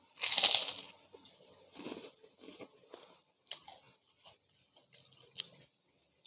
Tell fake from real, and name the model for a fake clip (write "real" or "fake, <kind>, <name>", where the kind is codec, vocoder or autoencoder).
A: real